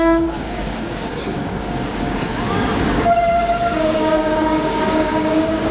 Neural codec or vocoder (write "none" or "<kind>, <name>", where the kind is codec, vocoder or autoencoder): codec, DAC